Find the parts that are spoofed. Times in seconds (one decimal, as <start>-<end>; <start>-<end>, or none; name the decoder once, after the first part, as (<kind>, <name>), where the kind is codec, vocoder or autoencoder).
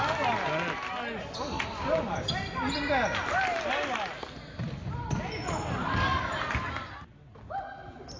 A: none